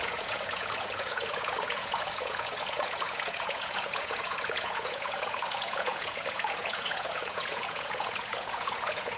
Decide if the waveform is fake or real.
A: fake